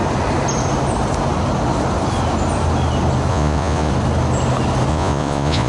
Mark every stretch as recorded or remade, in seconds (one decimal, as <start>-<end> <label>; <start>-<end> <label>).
0.0-3.3 recorded; 3.3-3.9 remade; 3.9-4.9 recorded; 4.9-5.7 remade